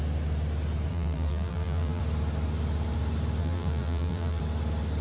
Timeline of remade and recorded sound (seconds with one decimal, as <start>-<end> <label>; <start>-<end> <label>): 0.0-0.9 recorded; 0.9-2.0 remade; 2.0-3.4 recorded; 3.4-4.4 remade; 4.4-5.0 recorded